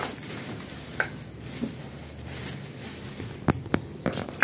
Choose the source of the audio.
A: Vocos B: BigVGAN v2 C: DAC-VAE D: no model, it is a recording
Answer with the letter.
D